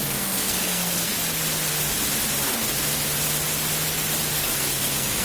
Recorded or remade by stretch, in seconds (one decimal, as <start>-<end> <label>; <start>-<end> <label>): 0.0-1.2 remade; 1.2-4.3 recorded; 4.3-5.2 remade